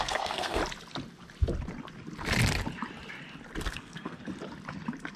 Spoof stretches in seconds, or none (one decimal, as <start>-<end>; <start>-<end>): 0.0-0.6; 3.7-4.2